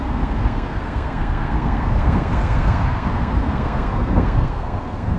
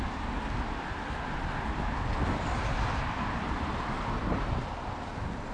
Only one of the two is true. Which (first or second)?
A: second